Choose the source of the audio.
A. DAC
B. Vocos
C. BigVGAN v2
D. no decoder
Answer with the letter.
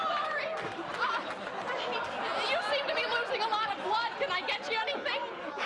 D